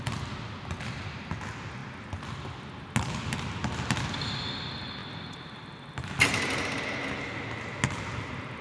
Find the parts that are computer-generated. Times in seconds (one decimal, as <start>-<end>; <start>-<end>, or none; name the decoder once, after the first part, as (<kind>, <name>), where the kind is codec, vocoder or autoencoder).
none